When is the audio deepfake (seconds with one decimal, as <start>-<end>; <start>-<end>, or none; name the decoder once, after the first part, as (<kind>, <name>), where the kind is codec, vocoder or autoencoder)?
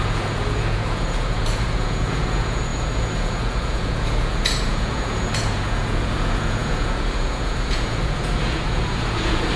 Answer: 0.0-9.6 (vocoder, Vocos)